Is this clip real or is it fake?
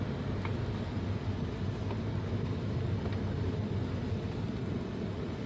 real